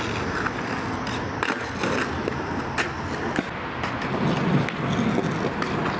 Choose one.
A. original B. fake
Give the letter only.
A